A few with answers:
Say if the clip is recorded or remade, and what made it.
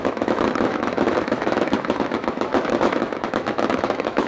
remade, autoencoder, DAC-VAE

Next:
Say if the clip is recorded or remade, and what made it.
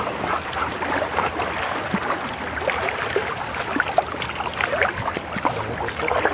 recorded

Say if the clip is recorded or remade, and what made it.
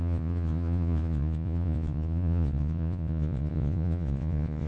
remade, vocoder, Vocos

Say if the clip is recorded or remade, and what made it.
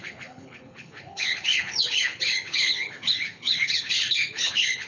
remade, codec, HILCodec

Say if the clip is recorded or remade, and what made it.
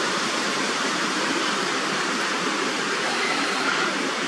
remade, vocoder, BigVGAN v2